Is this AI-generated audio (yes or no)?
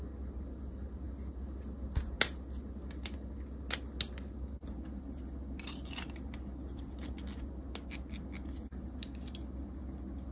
no